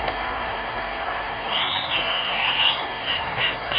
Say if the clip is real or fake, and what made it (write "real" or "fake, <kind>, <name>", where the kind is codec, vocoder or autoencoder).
fake, codec, SNAC